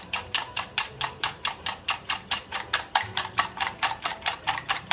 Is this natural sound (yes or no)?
no